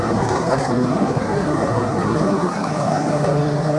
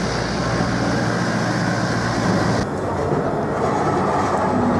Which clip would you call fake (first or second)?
first